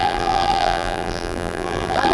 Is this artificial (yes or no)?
yes